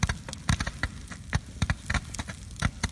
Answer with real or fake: real